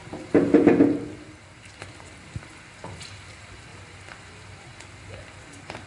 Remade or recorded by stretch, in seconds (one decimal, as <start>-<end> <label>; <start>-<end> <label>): 0.0-5.9 recorded